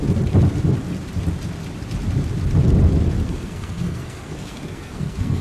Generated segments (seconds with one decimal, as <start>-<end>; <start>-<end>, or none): 3.2-5.4